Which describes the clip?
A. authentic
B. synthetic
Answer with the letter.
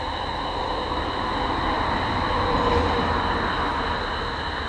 A